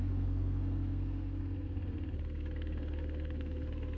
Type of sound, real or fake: fake